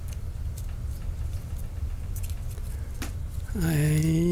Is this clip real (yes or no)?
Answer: yes